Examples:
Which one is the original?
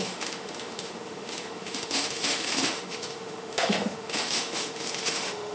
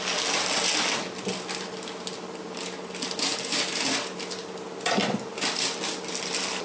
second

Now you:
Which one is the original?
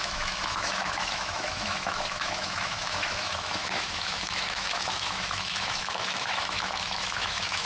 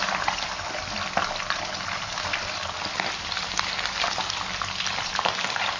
second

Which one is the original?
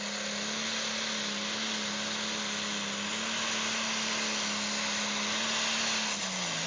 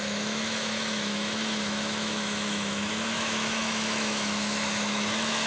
first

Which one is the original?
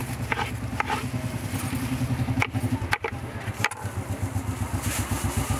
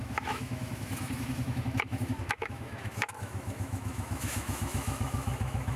first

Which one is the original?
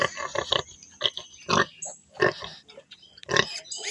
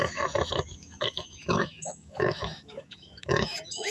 first